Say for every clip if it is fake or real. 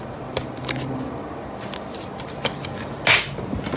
real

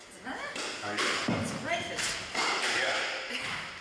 real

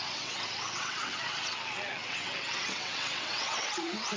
fake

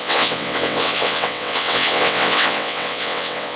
fake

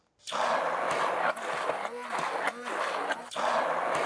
real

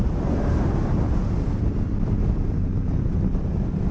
real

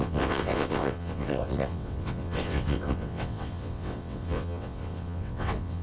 fake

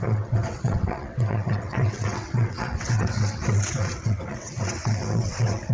fake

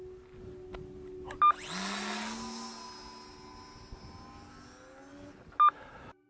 real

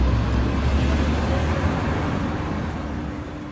real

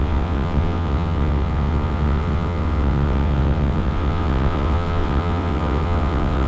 fake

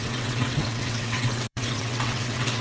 fake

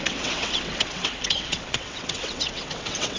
fake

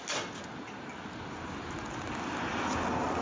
real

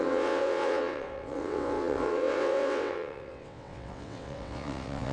fake